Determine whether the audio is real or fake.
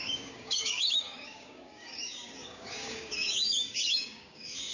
fake